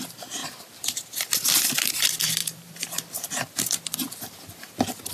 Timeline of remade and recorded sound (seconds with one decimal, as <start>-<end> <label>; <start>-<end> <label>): 0.0-2.4 recorded; 2.4-3.0 remade; 3.0-5.1 recorded